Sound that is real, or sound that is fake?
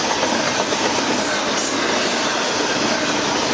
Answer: real